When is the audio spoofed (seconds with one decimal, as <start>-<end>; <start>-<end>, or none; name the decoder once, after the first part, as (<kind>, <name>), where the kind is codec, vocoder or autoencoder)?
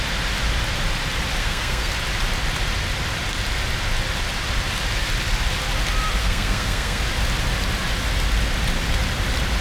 1.4-1.9 (codec, SNAC); 6.2-7.0